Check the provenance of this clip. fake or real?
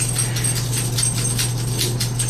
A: real